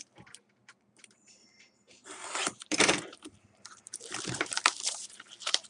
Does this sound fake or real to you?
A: fake